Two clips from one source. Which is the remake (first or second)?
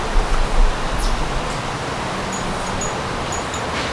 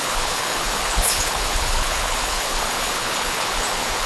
second